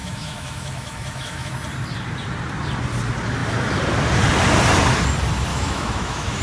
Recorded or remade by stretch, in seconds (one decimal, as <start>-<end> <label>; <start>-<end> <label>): 0.0-1.5 remade; 1.5-5.5 recorded; 5.5-6.4 remade